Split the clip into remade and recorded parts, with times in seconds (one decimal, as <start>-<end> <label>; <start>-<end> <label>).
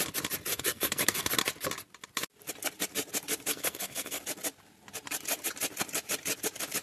0.0-0.5 recorded; 0.5-1.3 remade; 1.3-3.5 recorded; 3.5-4.2 remade; 4.2-6.8 recorded